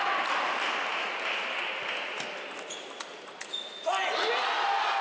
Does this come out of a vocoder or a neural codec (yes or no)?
no